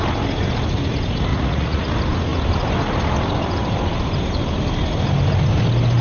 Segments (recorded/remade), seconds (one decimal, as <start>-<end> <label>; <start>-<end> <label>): 0.0-1.3 recorded; 1.3-1.9 remade; 1.9-6.0 recorded